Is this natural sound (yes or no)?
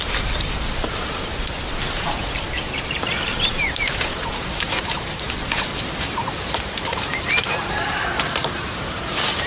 no